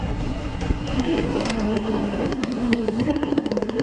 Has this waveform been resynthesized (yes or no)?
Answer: yes